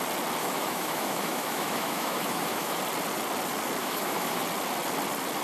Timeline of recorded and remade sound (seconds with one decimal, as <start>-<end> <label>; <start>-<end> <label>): 0.0-0.4 recorded; 0.4-2.8 remade; 2.8-3.8 recorded; 3.8-4.4 remade; 4.4-5.4 recorded